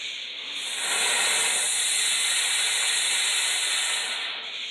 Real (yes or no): yes